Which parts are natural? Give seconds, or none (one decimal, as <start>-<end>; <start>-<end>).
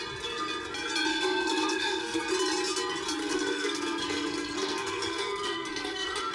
0.0-1.1; 2.2-3.2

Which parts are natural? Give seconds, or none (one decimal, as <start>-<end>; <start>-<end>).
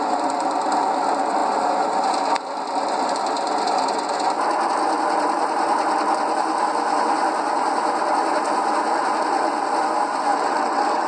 0.0-10.3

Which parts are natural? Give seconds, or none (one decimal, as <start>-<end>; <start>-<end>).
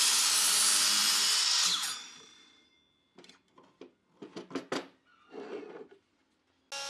0.0-6.9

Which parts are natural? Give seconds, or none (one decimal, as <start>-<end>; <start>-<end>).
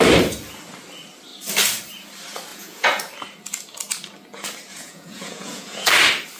0.0-2.5; 3.0-4.7; 5.9-6.4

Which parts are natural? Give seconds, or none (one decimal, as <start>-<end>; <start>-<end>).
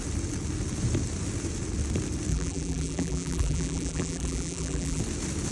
0.0-2.3; 5.0-5.5